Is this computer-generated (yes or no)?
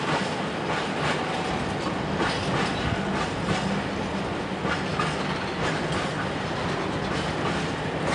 no